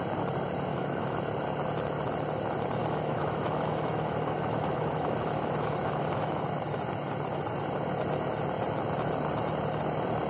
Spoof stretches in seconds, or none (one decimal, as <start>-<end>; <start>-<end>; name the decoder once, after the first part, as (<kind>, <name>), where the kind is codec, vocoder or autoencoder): 0.7-1.2 (autoencoder, DAC-VAE); 2.8-6.4